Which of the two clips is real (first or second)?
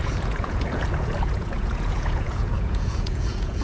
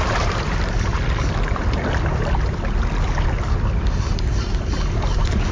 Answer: second